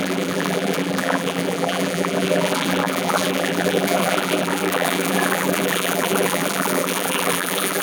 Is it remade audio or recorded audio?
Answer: remade